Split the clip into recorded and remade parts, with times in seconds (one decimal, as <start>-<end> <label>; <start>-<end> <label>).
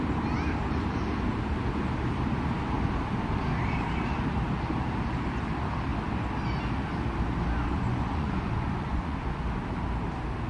0.0-7.7 recorded; 7.7-9.4 remade; 9.4-10.5 recorded